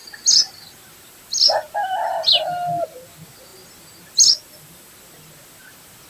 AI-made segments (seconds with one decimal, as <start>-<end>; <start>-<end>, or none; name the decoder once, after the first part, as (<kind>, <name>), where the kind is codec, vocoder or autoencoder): none